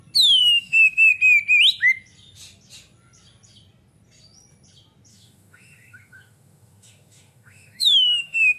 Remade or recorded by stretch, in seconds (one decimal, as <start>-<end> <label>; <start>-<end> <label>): 0.0-0.4 recorded; 0.4-1.1 remade; 1.1-5.1 recorded; 5.1-8.6 remade